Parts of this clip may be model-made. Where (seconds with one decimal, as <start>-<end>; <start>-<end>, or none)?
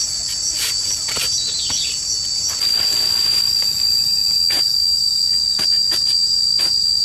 none